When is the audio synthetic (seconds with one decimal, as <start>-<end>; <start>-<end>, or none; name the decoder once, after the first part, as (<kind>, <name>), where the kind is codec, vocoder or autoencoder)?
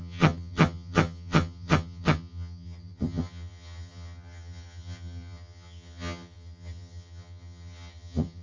0.0-8.4 (vocoder, HiFi-GAN)